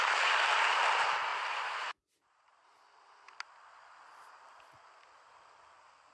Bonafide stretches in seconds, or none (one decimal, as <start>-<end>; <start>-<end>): 0.0-6.1